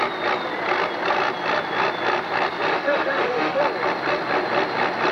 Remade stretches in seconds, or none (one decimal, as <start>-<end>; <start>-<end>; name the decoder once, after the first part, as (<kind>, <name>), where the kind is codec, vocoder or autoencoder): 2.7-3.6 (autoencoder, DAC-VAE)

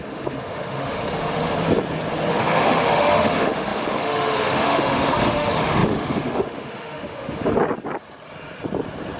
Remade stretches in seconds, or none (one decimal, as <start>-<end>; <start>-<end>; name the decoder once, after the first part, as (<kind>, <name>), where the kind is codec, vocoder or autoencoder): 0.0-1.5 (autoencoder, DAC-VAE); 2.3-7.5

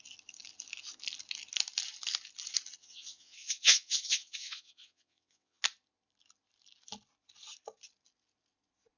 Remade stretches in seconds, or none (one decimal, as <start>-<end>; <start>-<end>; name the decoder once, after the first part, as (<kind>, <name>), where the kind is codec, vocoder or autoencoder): 2.8-5.6 (vocoder, WaveNeXt)